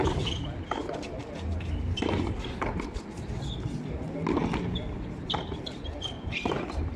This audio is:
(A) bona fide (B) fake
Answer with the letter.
A